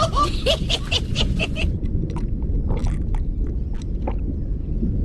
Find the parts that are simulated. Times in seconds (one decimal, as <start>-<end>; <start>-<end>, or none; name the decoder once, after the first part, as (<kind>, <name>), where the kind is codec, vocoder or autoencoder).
1.1-1.8 (vocoder, Vocos)